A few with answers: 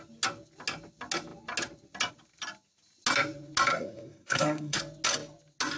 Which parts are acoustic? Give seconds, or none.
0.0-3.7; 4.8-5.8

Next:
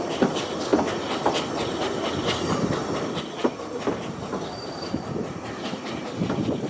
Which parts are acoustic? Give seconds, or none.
0.0-6.7